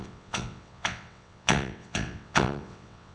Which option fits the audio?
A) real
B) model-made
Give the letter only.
B